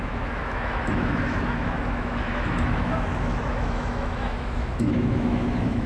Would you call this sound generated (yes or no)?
yes